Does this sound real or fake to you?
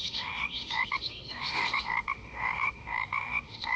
fake